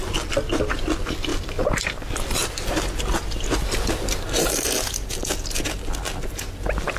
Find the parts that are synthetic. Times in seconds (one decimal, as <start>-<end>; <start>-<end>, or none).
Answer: none